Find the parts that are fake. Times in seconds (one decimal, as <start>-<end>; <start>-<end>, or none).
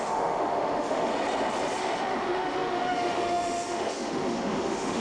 0.0-1.1; 1.8-5.0